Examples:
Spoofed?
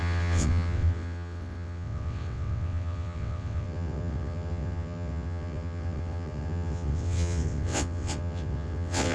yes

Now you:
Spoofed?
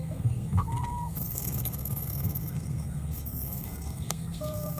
yes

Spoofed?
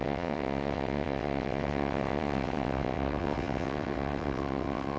yes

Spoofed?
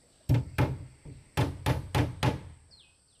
no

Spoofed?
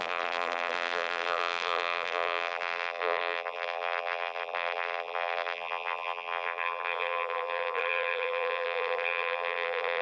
yes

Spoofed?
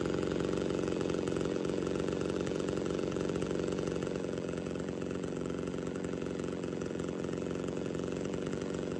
yes